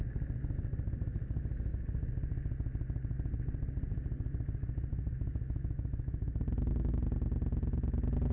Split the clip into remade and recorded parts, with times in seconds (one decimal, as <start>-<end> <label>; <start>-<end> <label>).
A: 0.0-4.9 recorded; 4.9-7.0 remade; 7.0-8.3 recorded